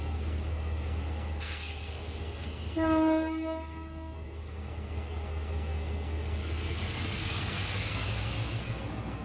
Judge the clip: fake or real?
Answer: fake